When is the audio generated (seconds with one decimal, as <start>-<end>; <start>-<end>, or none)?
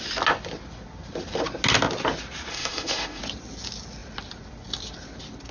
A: 2.5-3.2